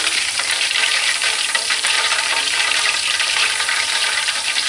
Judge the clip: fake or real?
fake